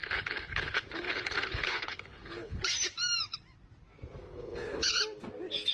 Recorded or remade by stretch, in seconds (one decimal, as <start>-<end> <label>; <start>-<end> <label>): 0.0-2.6 remade; 2.6-4.2 recorded; 4.2-5.0 remade; 5.0-5.7 recorded